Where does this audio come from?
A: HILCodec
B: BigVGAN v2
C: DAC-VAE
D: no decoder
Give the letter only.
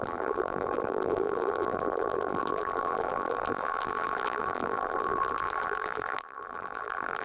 B